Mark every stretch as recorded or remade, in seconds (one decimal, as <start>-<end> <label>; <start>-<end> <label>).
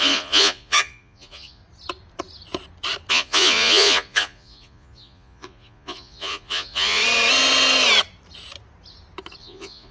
0.0-1.6 remade; 1.6-3.1 recorded; 3.1-7.0 remade; 7.0-9.4 recorded; 9.4-9.9 remade